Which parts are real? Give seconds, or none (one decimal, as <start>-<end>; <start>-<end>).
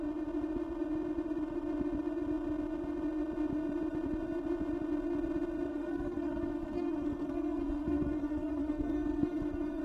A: 0.0-5.7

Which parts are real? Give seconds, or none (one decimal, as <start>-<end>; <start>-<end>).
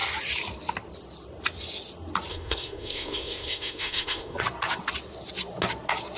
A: 0.0-2.3; 4.4-6.2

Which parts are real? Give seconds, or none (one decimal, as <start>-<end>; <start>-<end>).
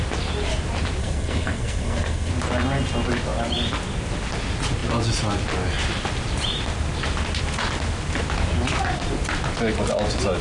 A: 0.0-1.0; 2.3-10.4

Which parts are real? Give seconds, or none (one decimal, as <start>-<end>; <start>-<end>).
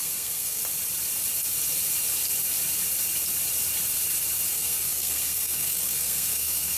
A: 0.6-4.5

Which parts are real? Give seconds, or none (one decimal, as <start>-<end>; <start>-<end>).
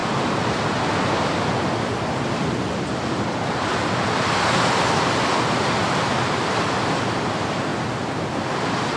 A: 0.0-9.0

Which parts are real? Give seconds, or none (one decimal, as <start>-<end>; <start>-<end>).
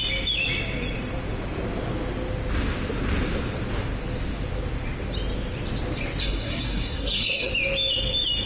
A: 0.0-6.2; 7.5-8.5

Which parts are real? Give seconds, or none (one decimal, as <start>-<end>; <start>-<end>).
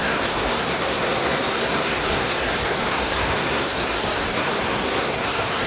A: none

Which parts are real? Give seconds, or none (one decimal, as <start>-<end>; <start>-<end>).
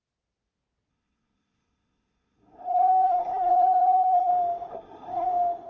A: 0.0-0.9; 4.3-4.7; 5.3-5.7